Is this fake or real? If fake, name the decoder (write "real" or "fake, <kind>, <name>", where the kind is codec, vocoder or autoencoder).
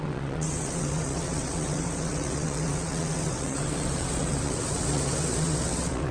fake, vocoder, WaveNeXt